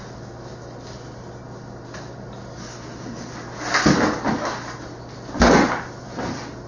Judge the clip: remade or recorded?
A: recorded